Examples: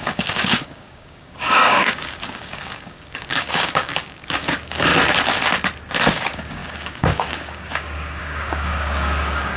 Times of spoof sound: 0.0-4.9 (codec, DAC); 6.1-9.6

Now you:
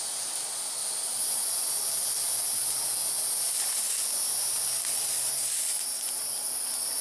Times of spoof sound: none

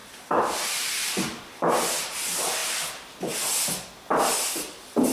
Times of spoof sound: 0.0-1.1 (vocoder, BigVGAN v2)

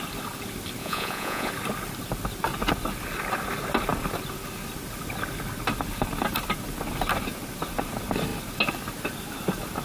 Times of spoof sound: 0.8-1.5 (vocoder, Vocos)

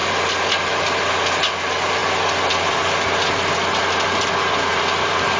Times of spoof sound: 4.7-5.4 (vocoder, BigVGAN v2)

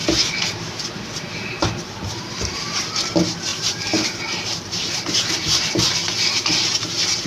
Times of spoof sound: 3.5-5.7 (vocoder, BigVGAN v2)

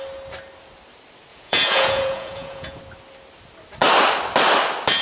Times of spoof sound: 1.3-2.8 (vocoder, Vocos)

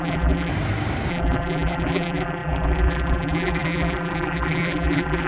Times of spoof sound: 0.0-0.5 (vocoder, BigVGAN v2); 1.1-5.3